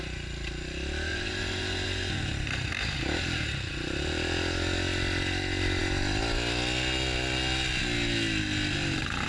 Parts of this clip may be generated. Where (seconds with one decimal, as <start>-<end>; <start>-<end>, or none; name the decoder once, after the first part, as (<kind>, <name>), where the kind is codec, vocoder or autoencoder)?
1.1-2.3 (vocoder, Vocos)